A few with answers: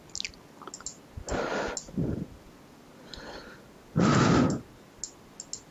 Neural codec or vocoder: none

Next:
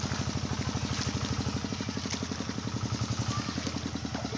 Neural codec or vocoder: none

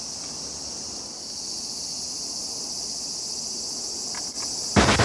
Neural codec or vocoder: none